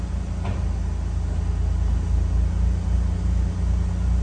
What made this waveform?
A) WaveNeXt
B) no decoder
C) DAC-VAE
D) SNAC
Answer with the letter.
B